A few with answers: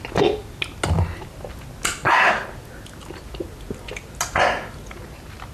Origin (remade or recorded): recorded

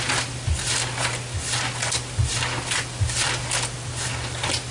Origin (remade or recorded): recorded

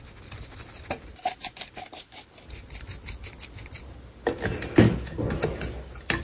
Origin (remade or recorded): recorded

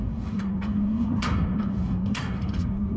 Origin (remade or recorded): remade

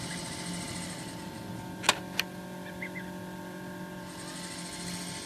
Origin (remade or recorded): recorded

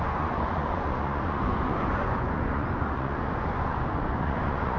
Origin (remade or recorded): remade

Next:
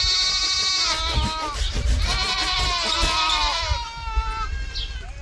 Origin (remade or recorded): recorded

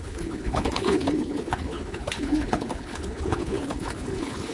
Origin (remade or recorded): remade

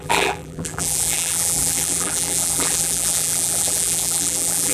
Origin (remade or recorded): remade